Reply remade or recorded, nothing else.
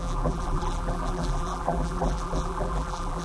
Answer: remade